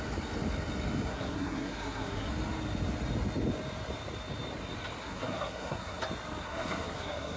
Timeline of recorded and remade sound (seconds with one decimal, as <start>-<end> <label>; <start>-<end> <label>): 0.0-1.1 recorded; 1.1-2.3 remade; 2.3-5.0 recorded; 5.0-6.0 remade; 6.0-6.4 recorded; 6.4-7.4 remade